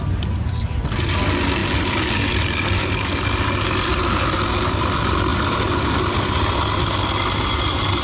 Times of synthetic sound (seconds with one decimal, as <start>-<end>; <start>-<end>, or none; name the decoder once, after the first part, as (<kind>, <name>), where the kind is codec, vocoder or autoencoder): none